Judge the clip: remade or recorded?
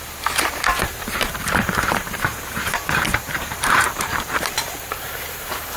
remade